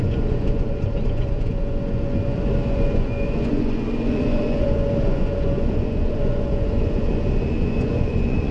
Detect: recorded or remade remade